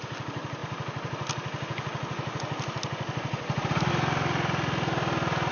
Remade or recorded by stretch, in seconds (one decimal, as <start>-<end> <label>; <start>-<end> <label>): 0.0-5.5 recorded